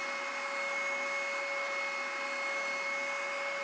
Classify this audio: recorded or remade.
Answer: recorded